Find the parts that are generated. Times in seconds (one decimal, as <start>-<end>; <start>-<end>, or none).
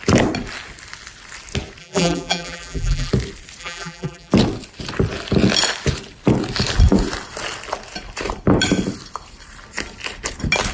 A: 1.8-3.1; 3.6-4.3